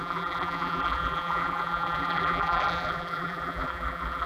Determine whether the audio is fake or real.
fake